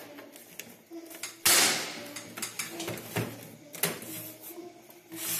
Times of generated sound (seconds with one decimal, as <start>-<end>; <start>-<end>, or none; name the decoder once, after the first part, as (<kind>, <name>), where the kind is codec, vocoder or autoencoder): none